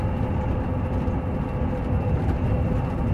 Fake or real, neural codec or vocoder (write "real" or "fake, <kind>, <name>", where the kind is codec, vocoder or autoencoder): real